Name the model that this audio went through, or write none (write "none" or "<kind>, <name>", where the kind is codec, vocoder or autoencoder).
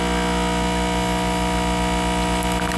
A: none